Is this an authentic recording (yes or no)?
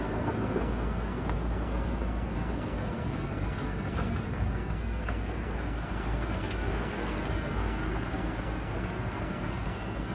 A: no